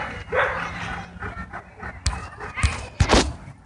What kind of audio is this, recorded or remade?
recorded